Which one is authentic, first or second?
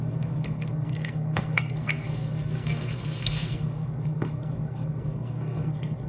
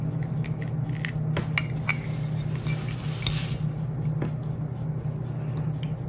second